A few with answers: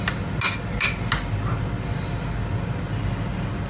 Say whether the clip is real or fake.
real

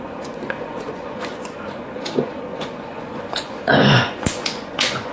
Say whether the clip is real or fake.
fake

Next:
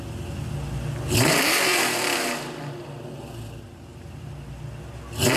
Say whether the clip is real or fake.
real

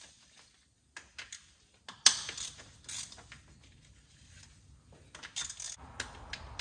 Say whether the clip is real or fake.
real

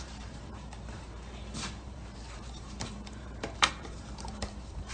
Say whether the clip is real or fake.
fake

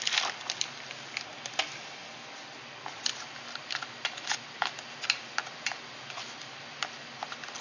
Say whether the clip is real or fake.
real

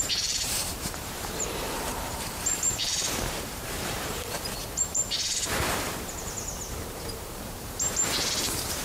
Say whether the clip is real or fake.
fake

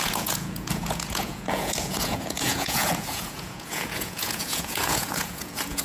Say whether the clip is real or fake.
fake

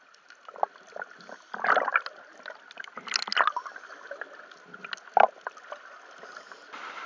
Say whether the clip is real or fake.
real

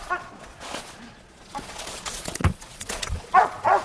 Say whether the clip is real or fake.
fake